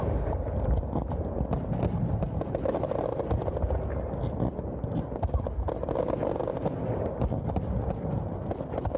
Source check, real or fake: real